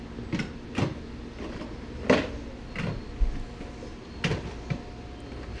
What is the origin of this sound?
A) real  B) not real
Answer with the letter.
A